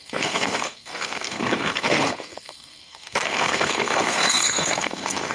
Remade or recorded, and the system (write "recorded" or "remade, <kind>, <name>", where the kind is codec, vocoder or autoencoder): remade, codec, SNAC